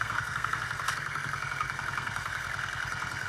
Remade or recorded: remade